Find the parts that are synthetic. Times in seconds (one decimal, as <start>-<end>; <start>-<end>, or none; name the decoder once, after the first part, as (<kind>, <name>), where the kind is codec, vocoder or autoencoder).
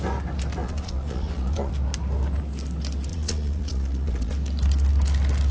0.6-1.7 (vocoder, Vocos); 3.1-4.3